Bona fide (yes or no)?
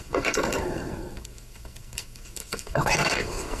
no